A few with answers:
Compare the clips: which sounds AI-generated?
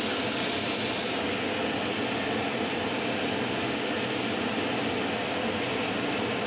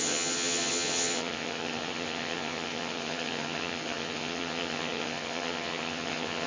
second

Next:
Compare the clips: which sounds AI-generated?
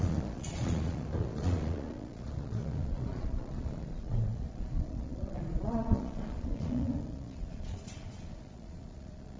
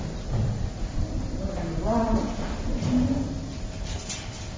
first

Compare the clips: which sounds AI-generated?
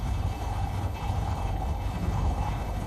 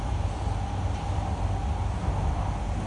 first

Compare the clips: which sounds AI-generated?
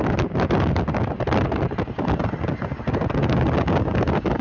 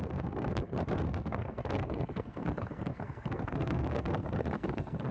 second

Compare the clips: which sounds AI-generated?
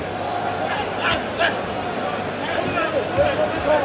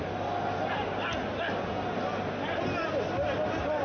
first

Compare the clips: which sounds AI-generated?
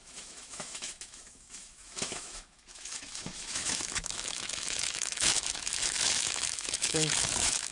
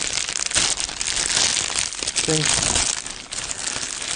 first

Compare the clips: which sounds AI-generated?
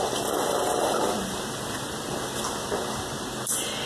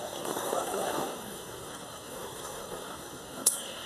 second